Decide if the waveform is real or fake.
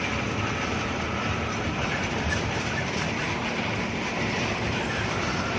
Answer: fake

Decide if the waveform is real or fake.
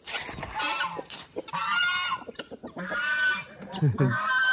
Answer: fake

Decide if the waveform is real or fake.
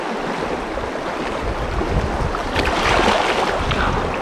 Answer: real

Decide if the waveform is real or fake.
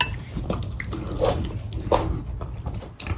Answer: real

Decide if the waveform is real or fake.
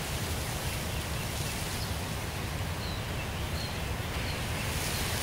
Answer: real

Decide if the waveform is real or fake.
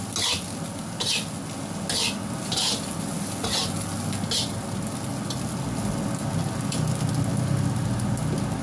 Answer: real